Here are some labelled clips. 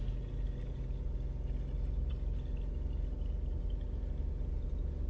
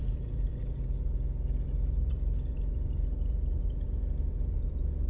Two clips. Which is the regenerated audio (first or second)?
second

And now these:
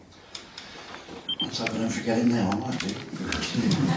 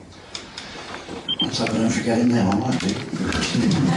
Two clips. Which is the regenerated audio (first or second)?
second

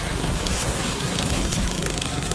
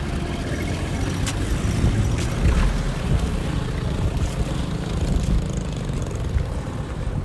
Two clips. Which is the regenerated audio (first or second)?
first